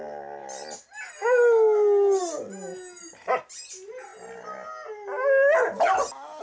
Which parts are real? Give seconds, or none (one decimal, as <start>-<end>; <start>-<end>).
0.0-6.4